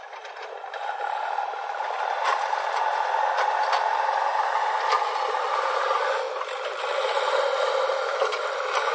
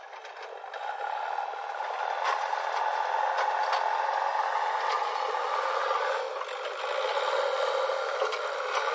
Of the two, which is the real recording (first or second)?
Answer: second